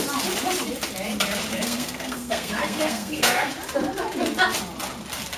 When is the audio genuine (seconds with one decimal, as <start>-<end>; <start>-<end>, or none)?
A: 0.0-1.5; 3.5-5.4